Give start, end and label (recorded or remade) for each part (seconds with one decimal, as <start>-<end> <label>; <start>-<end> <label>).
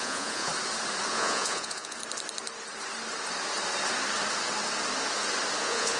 0.0-0.5 remade; 0.5-1.1 recorded; 1.1-2.0 remade; 2.0-5.6 recorded; 5.6-6.0 remade